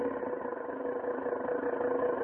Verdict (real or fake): real